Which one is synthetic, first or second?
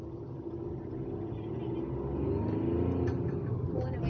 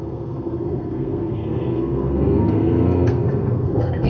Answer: second